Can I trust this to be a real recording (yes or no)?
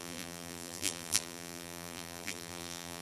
no